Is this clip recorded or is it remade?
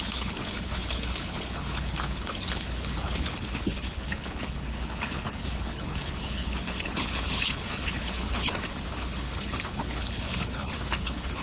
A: remade